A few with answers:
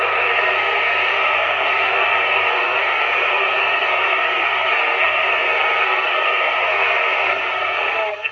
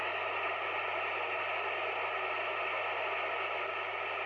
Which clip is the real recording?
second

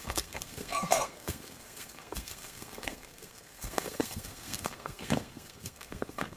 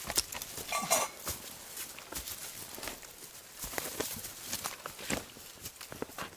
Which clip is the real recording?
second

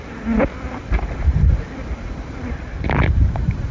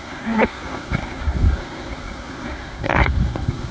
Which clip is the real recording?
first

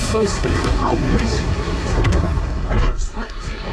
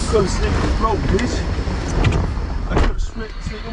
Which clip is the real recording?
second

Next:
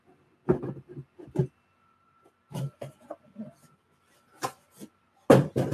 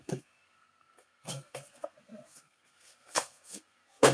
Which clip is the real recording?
first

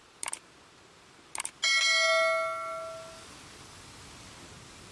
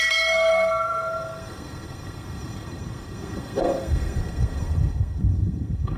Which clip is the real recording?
first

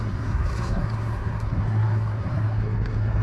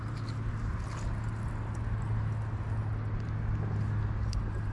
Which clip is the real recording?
second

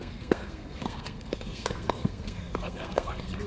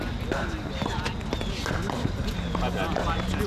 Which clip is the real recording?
second